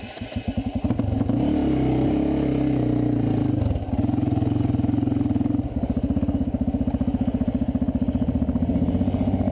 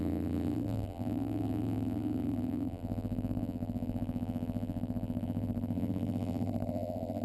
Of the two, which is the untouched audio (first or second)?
first